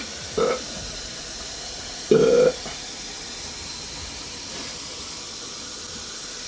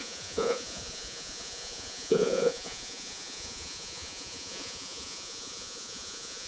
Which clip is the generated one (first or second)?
second